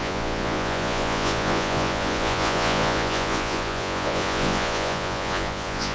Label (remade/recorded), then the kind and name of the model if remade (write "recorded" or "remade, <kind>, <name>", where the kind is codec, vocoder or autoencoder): remade, vocoder, Vocos